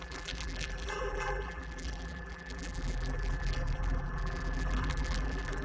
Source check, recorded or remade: remade